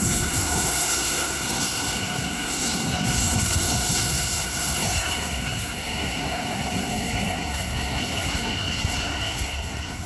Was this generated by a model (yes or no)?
yes